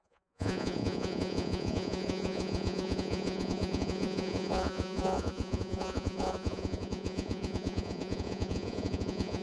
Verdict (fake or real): fake